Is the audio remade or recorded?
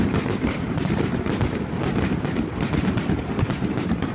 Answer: remade